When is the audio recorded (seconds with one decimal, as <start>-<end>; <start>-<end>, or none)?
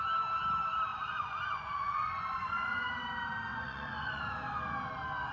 0.0-0.9; 2.9-3.5; 4.2-5.3